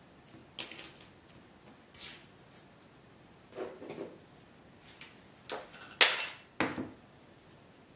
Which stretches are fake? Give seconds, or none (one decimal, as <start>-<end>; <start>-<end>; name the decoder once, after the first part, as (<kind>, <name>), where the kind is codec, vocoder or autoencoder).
none